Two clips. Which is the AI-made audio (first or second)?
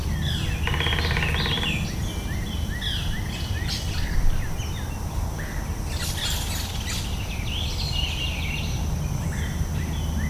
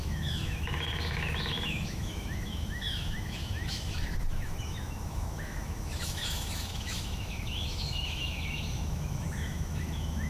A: second